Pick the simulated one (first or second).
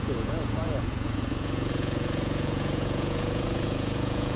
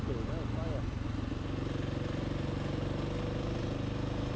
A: first